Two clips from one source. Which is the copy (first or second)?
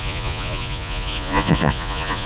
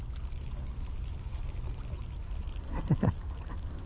first